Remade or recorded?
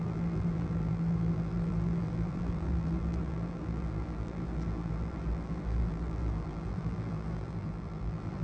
remade